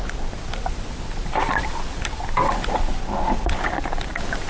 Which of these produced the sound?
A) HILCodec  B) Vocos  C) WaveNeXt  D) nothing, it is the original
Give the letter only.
D